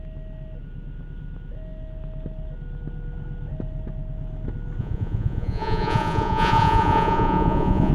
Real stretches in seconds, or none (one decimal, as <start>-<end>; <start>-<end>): 0.0-4.8